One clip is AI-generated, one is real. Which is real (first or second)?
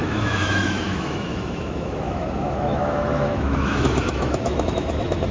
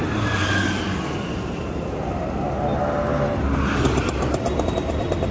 second